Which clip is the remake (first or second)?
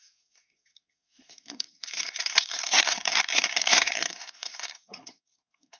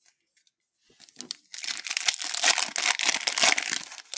first